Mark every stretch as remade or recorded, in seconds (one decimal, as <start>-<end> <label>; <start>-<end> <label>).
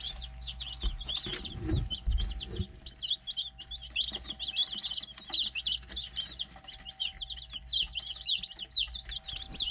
0.0-9.7 recorded